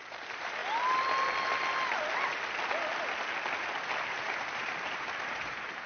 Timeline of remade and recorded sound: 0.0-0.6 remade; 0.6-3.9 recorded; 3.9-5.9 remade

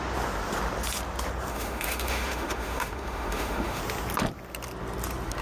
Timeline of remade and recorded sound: 0.0-1.5 recorded; 1.5-3.8 remade; 3.8-5.4 recorded